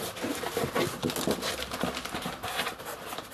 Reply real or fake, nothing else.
real